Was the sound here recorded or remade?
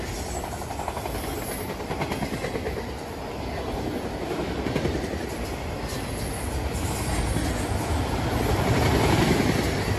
recorded